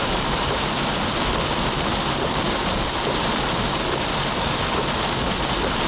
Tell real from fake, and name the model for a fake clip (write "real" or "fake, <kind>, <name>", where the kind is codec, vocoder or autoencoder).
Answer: real